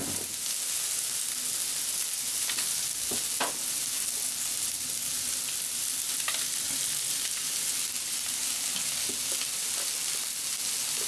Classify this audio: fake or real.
real